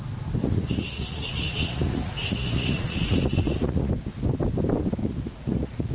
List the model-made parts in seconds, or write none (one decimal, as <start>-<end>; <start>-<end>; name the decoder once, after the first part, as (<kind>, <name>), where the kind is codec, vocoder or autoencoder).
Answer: 0.4-3.9 (vocoder, Vocos); 5.0-5.9